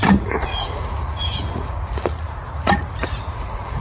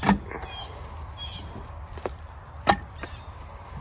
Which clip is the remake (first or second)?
first